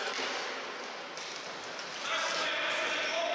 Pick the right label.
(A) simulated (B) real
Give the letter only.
B